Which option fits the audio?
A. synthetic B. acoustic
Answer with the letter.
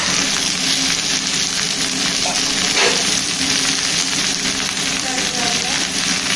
B